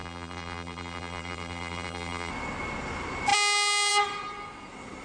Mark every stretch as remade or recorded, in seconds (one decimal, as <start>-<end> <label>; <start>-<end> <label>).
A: 0.0-2.3 remade; 2.3-5.0 recorded